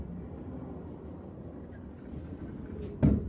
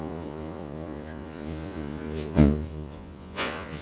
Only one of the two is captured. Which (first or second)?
first